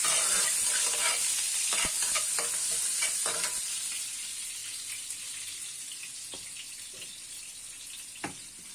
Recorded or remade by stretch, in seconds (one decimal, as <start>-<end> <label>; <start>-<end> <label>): 0.0-8.7 recorded